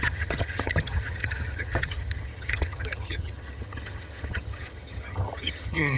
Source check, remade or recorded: remade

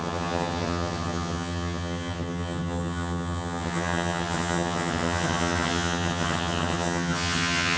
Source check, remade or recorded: remade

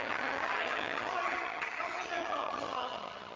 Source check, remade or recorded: remade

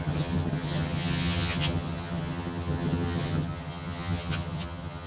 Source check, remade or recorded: remade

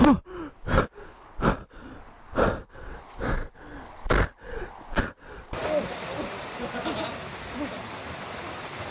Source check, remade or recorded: recorded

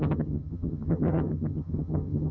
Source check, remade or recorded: remade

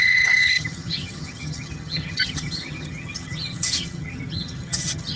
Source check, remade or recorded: remade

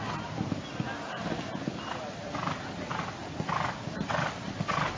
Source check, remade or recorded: recorded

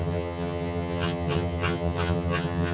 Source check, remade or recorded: remade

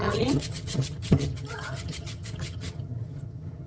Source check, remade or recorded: remade